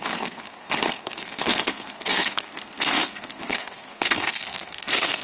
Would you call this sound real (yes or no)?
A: no